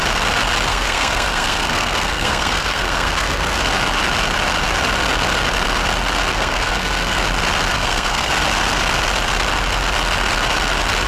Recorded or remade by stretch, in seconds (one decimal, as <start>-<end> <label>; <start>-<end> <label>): 0.0-0.7 recorded; 0.7-3.6 remade; 3.6-6.3 recorded; 6.3-7.2 remade; 7.2-7.7 recorded; 7.7-8.3 remade; 8.3-11.1 recorded